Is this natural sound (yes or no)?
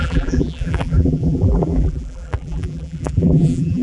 no